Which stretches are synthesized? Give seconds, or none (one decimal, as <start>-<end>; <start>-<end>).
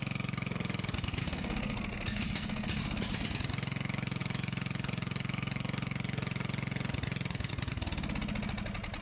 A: 1.2-2.8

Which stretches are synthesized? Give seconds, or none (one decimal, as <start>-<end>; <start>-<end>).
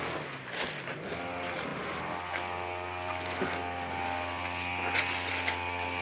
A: none